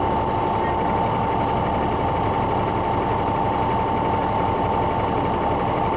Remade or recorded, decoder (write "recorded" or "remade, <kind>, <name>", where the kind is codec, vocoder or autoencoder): recorded